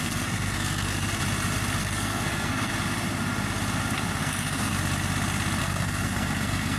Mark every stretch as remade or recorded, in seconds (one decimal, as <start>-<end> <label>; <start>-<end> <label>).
0.0-1.2 remade; 1.2-1.8 recorded; 1.8-2.7 remade; 2.7-4.2 recorded; 4.2-4.7 remade; 4.7-5.6 recorded; 5.6-6.8 remade